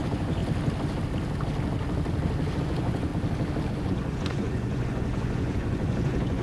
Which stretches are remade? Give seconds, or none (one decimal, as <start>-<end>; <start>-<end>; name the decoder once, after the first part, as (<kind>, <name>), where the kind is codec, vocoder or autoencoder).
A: 0.0-0.4 (vocoder, Vocos); 2.6-3.1; 3.7-6.4